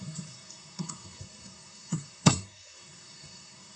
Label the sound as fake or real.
fake